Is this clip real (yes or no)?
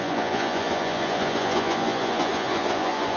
no